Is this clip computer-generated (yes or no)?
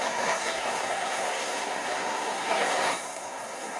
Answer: yes